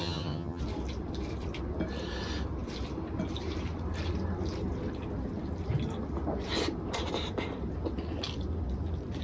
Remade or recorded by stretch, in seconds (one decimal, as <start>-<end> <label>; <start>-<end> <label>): 0.0-0.6 remade; 0.6-9.2 recorded